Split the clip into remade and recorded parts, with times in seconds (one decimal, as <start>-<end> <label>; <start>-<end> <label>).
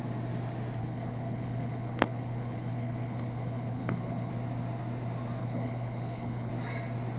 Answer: 0.0-0.8 recorded; 0.8-4.3 remade; 4.3-5.4 recorded; 5.4-6.5 remade; 6.5-7.2 recorded